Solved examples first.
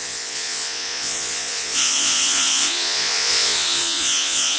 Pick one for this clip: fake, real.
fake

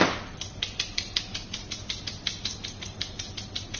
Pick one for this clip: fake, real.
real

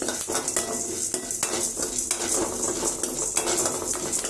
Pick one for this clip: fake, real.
real